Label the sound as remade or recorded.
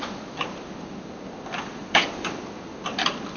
recorded